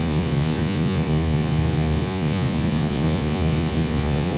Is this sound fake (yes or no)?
yes